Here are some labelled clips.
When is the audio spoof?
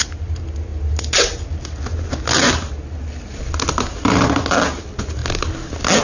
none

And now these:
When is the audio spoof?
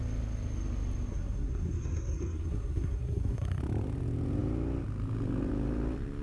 1.1-3.6 (codec, SNAC)